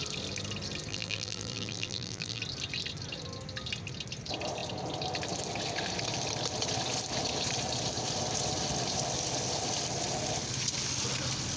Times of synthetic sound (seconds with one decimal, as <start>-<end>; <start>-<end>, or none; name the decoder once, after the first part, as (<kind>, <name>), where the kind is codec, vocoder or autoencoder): 0.9-2.4 (vocoder, BigVGAN v2)